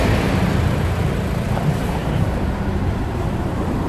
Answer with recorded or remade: remade